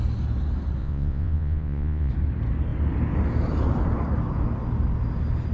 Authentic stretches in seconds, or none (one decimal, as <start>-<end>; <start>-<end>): 0.0-0.8; 2.1-5.5